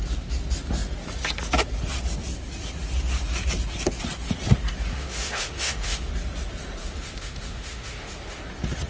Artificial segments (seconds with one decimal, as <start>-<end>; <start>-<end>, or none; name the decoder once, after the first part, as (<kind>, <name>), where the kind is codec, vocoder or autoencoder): 4.9-6.1 (autoencoder, DAC-VAE); 6.8-8.4